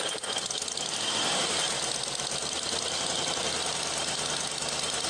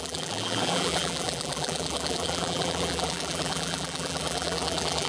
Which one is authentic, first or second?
first